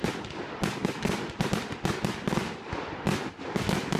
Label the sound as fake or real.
real